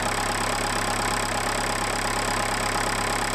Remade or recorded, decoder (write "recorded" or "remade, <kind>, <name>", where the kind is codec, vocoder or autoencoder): recorded